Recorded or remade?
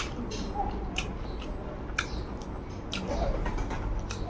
recorded